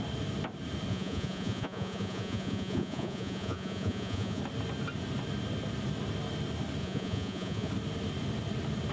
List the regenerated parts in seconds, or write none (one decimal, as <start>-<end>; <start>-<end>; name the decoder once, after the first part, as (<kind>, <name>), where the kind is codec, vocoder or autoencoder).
0.9-4.4 (vocoder, Vocos); 6.8-7.7